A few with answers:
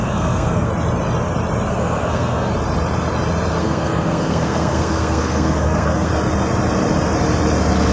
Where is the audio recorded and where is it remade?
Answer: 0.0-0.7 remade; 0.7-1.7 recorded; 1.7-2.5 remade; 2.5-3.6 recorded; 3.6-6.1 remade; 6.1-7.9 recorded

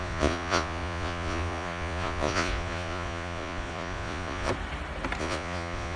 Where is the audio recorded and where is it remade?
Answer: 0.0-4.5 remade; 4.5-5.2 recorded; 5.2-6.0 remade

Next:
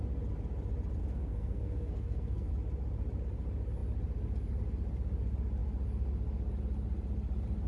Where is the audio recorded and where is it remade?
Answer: 0.0-1.0 recorded; 1.0-2.5 remade; 2.5-7.7 recorded